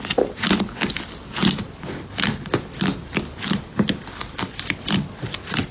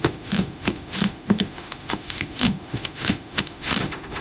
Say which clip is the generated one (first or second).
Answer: second